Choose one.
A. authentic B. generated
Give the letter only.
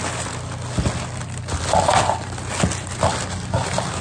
A